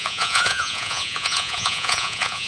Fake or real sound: fake